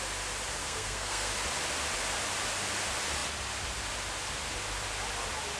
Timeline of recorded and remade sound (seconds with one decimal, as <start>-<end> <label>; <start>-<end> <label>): 0.0-0.6 recorded; 0.6-1.3 remade; 1.3-5.6 recorded